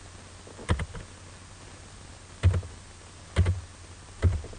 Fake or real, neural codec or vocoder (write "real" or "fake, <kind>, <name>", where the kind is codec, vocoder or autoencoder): real